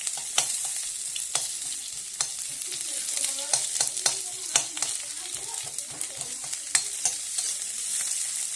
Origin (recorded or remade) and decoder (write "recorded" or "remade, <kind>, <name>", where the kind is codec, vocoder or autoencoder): recorded